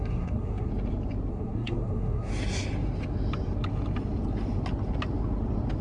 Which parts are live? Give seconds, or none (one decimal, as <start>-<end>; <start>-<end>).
0.7-1.3; 2.3-5.8